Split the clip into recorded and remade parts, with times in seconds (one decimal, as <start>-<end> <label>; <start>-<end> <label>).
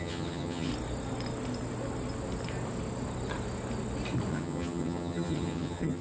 0.0-0.7 remade; 0.7-4.3 recorded; 4.3-6.0 remade